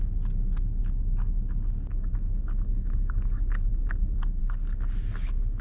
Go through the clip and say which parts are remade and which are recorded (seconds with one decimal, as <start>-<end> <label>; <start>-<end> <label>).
0.0-5.6 recorded